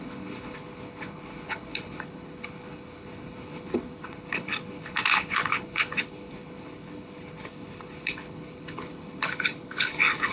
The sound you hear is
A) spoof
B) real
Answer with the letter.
A